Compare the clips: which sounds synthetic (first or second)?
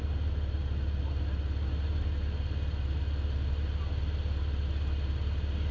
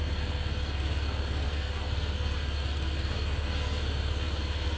second